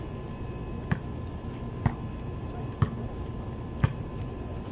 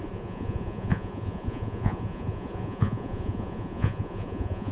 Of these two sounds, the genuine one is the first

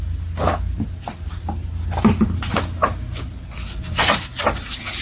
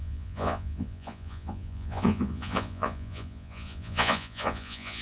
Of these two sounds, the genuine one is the first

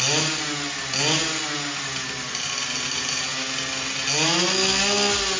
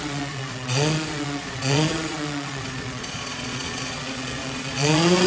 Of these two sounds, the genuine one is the first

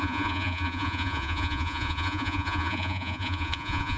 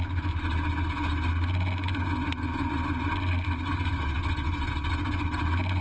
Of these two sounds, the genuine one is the second